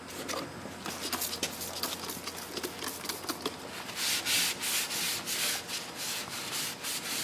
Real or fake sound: real